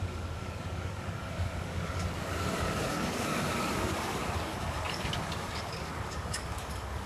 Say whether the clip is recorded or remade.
remade